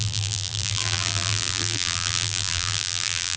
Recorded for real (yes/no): no